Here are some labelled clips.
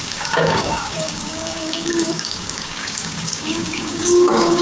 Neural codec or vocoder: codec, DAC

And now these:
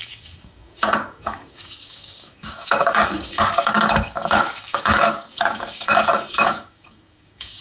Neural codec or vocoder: codec, DAC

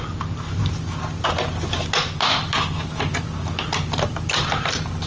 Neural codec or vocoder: none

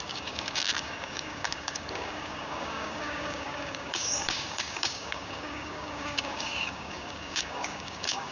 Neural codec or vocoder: codec, DAC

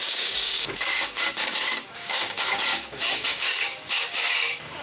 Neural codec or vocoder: codec, DAC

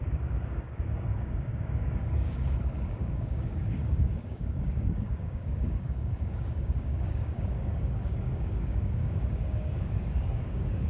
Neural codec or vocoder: codec, DAC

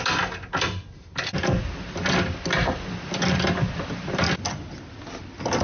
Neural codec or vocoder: none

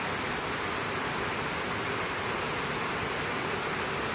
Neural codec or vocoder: none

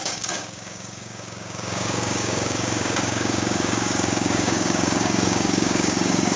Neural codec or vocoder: codec, DAC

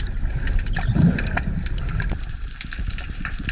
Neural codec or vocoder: none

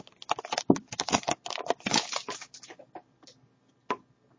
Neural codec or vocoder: none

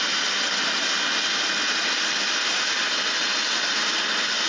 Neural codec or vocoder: none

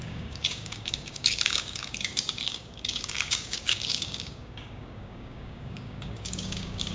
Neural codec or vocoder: codec, DAC